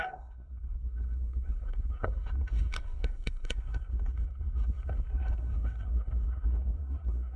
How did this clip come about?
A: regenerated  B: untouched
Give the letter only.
A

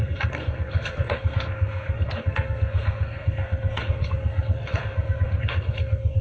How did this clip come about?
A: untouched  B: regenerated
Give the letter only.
B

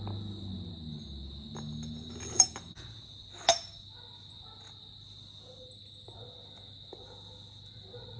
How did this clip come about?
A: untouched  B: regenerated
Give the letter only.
A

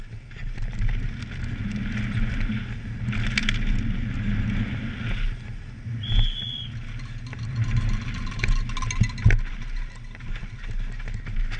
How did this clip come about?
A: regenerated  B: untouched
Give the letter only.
B